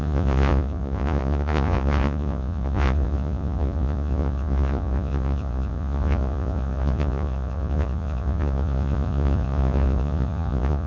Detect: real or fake fake